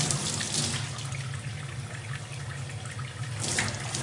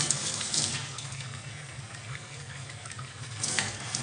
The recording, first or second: first